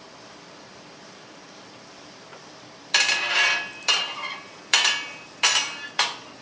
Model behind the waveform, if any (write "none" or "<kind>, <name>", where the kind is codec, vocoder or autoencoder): vocoder, BigVGAN v2